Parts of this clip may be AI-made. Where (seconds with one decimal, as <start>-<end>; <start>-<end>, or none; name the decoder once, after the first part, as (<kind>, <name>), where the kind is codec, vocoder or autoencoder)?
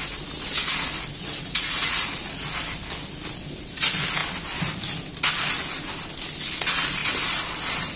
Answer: 1.1-2.4 (vocoder, Vocos)